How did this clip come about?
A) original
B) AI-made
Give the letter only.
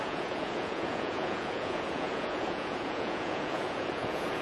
B